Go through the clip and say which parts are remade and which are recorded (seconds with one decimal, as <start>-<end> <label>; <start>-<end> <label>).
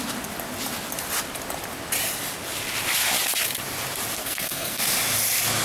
0.0-4.2 recorded; 4.2-4.8 remade; 4.8-5.6 recorded